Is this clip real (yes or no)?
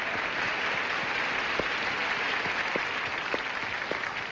yes